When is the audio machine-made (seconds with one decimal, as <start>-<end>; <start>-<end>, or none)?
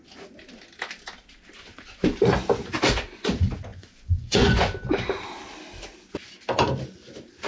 3.7-4.6